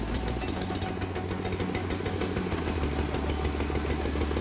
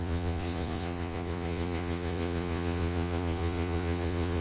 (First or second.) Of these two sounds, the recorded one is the first